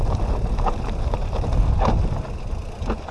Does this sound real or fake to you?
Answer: real